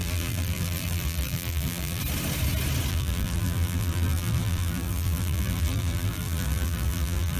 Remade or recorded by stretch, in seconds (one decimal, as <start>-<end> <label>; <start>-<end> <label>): 0.0-2.0 remade; 2.0-2.9 recorded; 2.9-7.4 remade